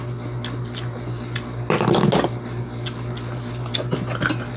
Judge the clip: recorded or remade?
recorded